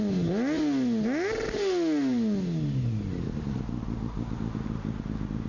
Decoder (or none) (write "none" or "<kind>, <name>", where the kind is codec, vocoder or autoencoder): none